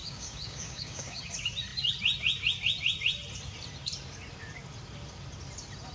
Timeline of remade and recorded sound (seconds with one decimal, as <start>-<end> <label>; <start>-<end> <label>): 0.0-1.2 remade; 1.2-5.9 recorded